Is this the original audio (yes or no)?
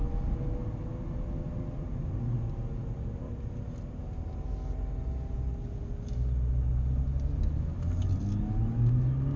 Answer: yes